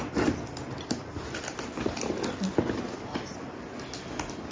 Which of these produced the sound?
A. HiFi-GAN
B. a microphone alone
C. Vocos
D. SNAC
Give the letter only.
B